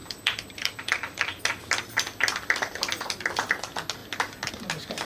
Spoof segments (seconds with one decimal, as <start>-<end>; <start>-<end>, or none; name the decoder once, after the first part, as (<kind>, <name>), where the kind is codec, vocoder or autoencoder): 0.0-1.4 (vocoder, BigVGAN v2)